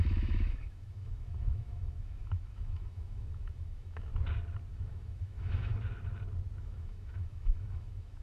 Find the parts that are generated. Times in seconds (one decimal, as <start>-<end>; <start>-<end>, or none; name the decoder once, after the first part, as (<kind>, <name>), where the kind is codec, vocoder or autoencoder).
0.0-4.1 (autoencoder, DAC-VAE); 4.7-5.7; 6.6-8.2